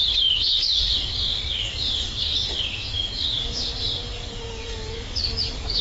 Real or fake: fake